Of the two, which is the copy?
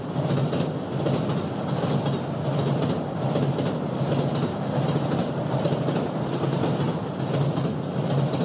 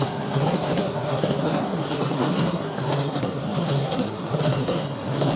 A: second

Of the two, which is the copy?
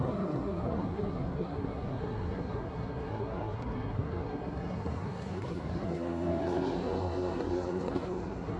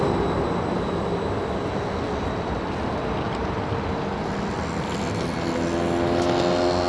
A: first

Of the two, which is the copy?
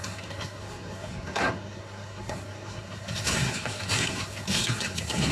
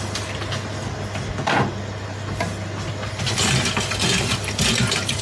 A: first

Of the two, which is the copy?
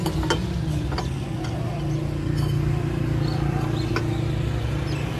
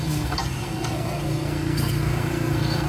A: second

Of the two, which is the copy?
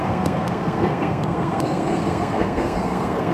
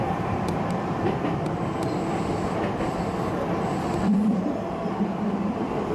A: first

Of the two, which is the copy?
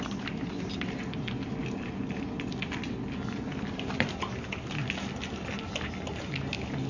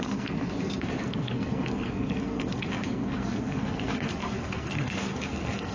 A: second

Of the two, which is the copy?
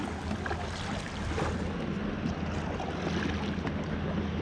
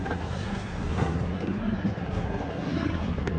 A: second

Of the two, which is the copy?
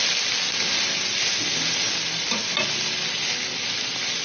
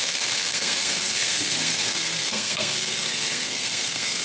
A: second